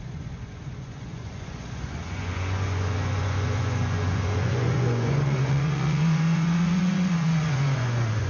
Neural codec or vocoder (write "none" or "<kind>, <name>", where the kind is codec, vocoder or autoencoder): vocoder, Vocos